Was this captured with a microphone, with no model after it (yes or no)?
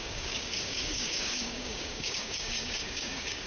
no